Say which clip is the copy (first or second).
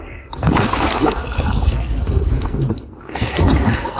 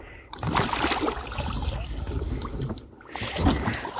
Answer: first